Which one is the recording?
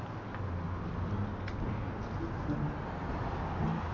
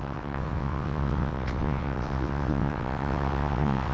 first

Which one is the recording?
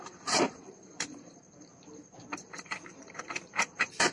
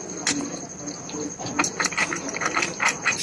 second